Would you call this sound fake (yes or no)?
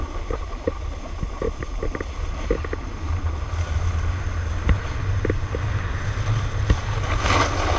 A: no